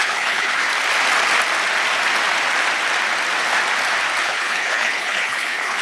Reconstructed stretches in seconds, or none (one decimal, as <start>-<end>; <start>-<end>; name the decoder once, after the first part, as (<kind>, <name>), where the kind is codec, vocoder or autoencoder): 0.0-0.7 (codec, HILCodec); 4.2-5.8